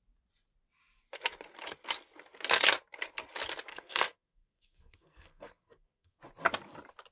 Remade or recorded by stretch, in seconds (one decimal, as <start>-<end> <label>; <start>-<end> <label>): 0.0-3.7 recorded; 3.7-6.2 remade; 6.2-7.1 recorded